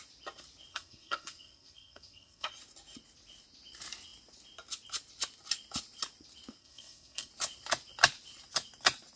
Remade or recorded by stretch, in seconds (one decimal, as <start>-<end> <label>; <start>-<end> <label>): 0.0-0.7 recorded; 0.7-2.5 remade; 2.5-6.6 recorded; 6.6-7.3 remade; 7.3-9.2 recorded